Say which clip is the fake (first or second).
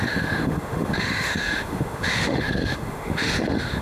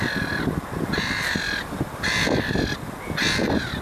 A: first